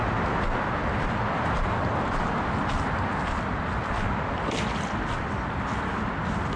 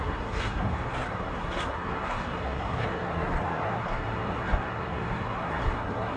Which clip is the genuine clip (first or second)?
first